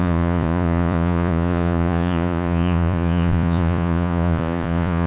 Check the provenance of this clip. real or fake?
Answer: fake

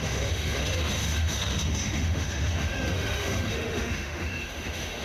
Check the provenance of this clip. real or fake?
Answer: fake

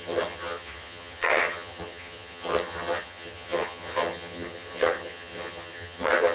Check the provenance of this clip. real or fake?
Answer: fake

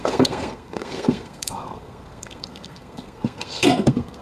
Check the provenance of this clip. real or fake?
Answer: fake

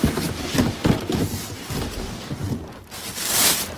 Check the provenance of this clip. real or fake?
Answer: fake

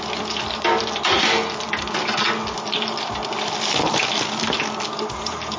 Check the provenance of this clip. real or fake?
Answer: real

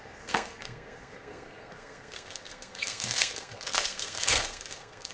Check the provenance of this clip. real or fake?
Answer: fake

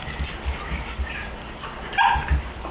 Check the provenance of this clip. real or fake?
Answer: real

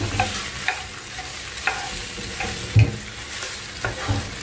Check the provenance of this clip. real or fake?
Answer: real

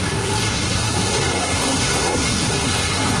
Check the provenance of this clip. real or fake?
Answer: fake